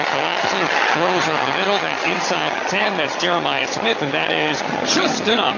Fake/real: fake